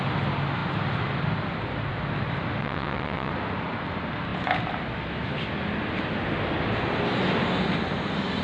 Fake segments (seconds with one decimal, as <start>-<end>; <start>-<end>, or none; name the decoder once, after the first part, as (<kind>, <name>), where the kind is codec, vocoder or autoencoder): 2.6-3.3 (vocoder, WaveNeXt)